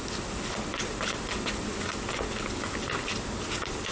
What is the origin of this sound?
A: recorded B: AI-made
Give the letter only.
A